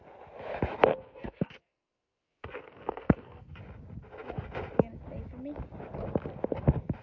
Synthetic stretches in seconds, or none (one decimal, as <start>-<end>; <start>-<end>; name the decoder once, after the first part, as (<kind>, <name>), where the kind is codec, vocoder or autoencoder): 0.9-3.6 (codec, SNAC)